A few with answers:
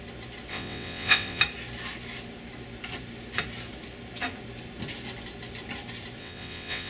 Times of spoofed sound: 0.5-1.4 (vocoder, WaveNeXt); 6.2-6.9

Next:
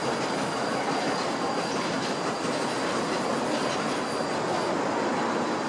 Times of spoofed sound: none

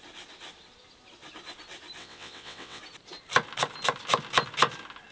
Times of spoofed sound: 2.0-2.8 (vocoder, WaveNeXt)

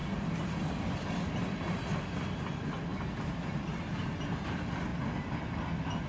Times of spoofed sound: none

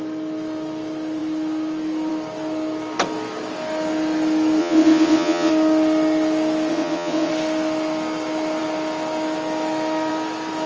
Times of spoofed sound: 4.6-5.5 (vocoder, WaveNeXt); 6.7-7.3

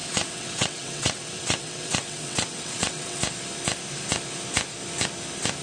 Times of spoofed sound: 0.0-3.2 (vocoder, WaveNeXt)